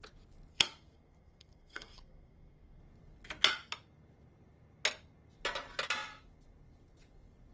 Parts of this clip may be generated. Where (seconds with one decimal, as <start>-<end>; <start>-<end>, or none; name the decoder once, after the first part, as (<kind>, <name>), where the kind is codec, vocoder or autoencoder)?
0.5-2.8 (codec, SNAC)